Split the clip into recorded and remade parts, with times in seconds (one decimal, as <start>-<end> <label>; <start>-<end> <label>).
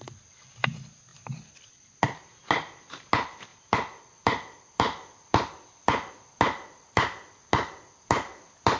0.0-8.8 recorded